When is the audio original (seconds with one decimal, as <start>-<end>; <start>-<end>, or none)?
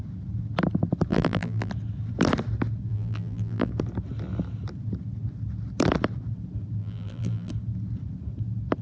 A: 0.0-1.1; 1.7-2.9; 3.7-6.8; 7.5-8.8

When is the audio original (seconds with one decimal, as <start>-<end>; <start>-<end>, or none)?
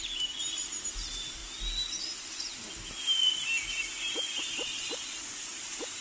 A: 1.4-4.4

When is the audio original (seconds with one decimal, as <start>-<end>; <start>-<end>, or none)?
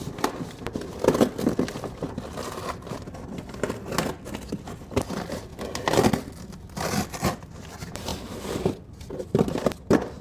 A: 0.0-8.1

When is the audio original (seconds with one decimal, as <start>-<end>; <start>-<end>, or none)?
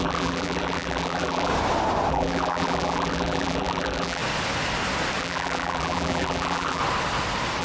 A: 1.5-2.1; 4.2-5.2; 6.8-7.6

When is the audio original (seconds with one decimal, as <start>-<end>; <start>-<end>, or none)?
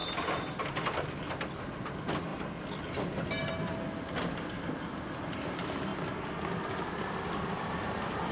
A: 0.8-5.9; 6.5-8.3